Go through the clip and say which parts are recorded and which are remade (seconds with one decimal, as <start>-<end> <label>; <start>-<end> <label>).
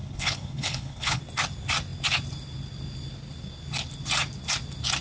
0.0-1.2 remade; 1.2-5.0 recorded